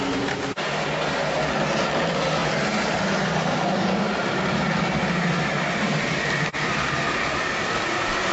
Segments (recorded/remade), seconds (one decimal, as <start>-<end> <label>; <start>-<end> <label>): 0.0-8.3 recorded